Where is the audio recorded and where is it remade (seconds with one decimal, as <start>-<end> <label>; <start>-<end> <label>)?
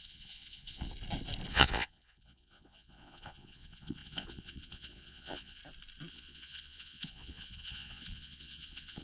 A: 0.0-0.9 remade; 0.9-1.5 recorded; 1.5-5.6 remade; 5.6-6.1 recorded; 6.1-9.0 remade